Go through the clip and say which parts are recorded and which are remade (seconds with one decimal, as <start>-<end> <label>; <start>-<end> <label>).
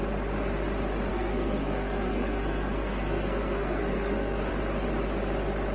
0.0-1.1 recorded; 1.1-4.5 remade; 4.5-5.7 recorded